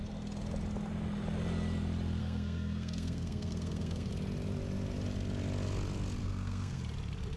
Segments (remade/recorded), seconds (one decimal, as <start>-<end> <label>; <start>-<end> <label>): 0.0-2.2 recorded; 2.2-4.1 remade; 4.1-6.2 recorded; 6.2-6.8 remade; 6.8-7.4 recorded